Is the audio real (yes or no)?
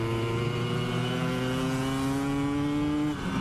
yes